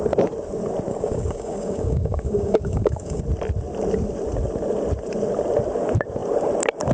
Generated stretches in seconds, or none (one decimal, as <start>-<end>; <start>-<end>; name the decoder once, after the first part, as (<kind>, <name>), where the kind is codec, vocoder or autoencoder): 0.9-3.2 (codec, DAC)